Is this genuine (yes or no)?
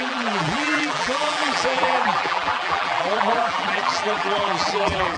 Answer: no